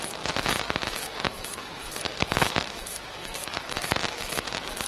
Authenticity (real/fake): fake